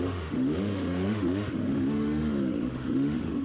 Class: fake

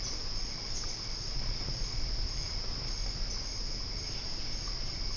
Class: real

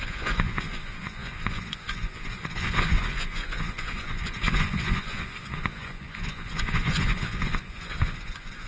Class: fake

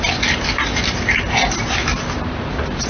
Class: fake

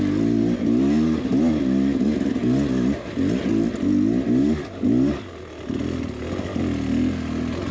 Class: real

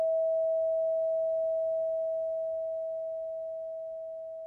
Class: real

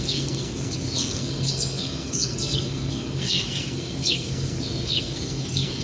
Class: fake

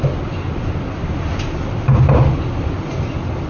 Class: real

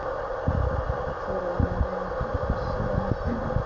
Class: real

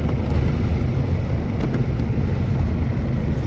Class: real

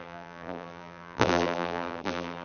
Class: fake